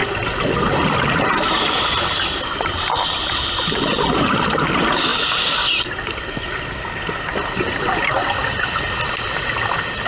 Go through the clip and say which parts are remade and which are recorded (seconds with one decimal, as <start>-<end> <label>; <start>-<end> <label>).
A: 0.0-10.1 remade